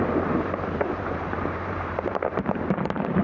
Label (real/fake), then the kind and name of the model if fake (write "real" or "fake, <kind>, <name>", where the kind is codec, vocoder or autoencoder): fake, vocoder, BigVGAN v2